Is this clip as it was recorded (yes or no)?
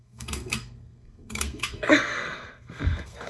no